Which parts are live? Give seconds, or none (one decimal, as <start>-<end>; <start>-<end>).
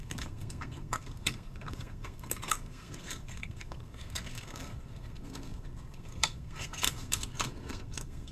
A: none